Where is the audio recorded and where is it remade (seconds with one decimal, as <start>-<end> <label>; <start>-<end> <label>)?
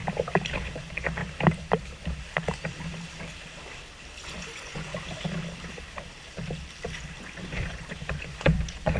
0.0-0.7 recorded; 0.7-1.2 remade; 1.2-4.2 recorded; 4.2-4.9 remade; 4.9-7.2 recorded; 7.2-9.0 remade